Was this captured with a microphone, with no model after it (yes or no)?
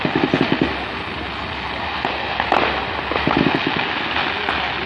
yes